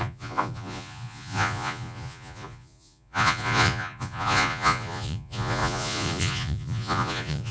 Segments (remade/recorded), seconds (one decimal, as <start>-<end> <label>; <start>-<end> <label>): 0.0-7.5 remade